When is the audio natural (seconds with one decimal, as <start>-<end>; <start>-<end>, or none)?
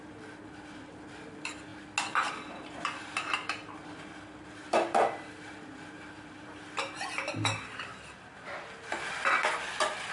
1.7-2.3